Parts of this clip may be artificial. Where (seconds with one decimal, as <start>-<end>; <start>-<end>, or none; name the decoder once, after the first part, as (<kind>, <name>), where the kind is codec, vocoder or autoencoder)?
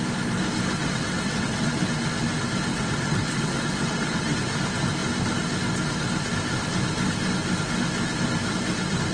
0.8-1.8 (vocoder, WaveNeXt); 2.7-4.4